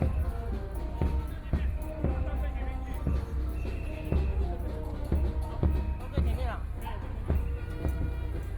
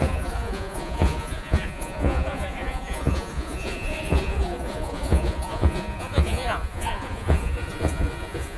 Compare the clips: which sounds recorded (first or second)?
first